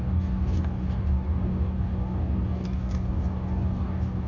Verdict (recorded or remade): remade